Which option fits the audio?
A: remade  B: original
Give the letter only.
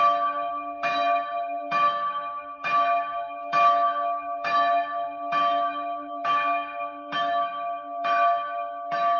A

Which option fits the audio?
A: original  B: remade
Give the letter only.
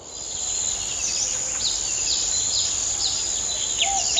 A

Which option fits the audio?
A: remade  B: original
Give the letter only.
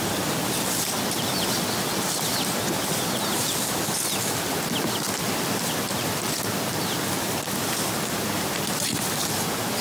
B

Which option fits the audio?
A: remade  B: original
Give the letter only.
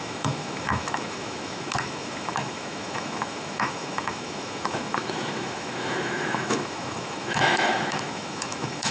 A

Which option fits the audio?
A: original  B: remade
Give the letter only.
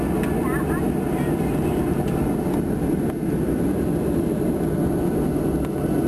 A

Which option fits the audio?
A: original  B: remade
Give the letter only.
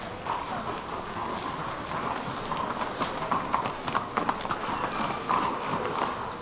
A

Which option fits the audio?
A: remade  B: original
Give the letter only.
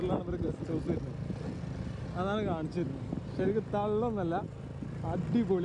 B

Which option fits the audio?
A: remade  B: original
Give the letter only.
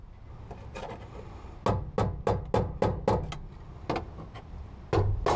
B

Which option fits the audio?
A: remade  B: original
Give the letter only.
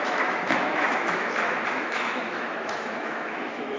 A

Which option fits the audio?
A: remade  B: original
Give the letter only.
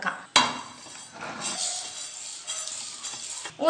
B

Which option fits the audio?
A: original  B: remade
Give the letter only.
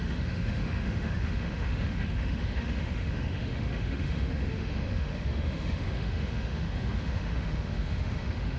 B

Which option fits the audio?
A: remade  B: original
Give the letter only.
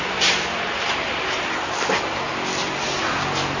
B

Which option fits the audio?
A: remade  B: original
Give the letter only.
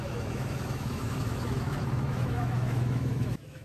A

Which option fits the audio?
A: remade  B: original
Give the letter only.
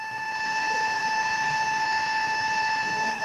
A